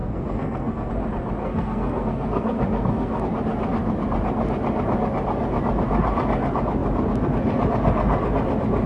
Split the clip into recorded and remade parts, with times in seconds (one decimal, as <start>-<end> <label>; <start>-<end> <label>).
0.0-0.9 remade; 0.9-1.4 recorded; 1.4-3.2 remade; 3.2-8.9 recorded